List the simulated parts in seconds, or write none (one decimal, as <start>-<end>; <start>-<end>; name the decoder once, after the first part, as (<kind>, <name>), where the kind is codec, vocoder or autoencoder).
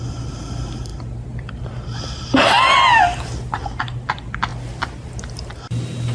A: none